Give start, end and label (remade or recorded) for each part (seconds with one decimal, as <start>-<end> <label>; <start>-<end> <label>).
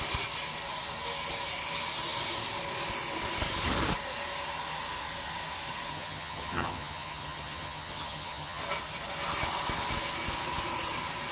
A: 0.0-5.9 recorded; 5.9-8.6 remade; 8.6-11.3 recorded